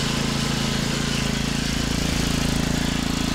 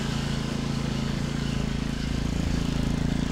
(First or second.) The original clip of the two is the first